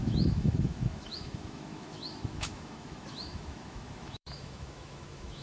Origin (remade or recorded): remade